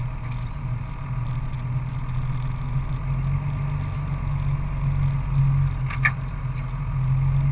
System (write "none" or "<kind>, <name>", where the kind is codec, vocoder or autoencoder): none